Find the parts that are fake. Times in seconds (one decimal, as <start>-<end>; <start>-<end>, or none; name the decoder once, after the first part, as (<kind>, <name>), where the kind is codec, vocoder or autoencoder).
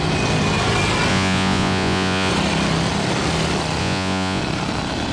1.1-2.3 (vocoder, Vocos); 3.8-4.4